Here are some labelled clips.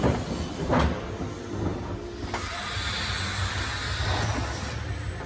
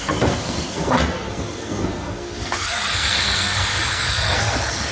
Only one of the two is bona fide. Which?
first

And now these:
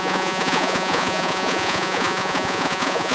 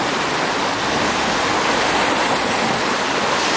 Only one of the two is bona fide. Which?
second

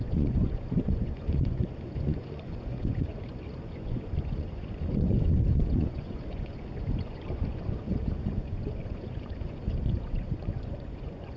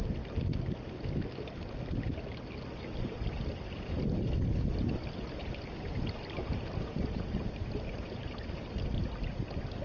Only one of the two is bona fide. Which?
second